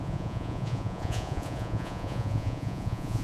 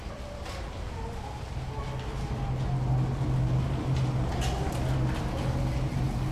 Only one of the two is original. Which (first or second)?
second